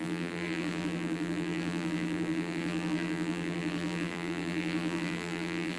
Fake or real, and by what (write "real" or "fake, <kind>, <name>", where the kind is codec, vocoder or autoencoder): fake, vocoder, BigVGAN v2